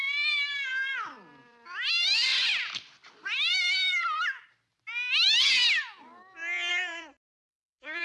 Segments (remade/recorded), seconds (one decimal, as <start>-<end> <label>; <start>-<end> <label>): 0.0-0.7 remade; 0.7-1.9 recorded; 1.9-2.3 remade; 2.3-6.7 recorded; 6.7-8.0 remade